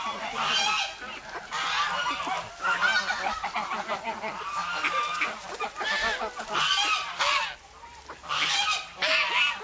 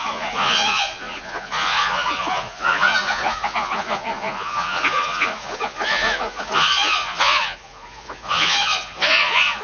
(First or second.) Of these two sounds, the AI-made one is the second